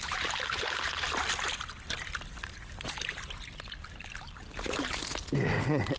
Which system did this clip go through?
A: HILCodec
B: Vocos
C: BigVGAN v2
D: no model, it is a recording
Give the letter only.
D